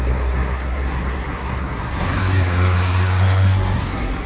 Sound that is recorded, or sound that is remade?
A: remade